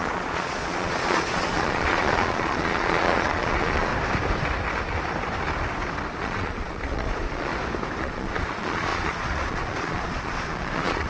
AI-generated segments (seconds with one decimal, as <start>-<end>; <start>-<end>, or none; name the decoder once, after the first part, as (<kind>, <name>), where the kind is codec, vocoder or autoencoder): 0.0-3.9 (vocoder, Vocos); 6.2-7.5; 8.0-11.1